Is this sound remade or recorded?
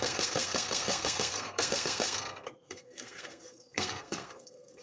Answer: remade